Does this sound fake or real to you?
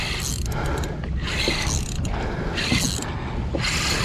real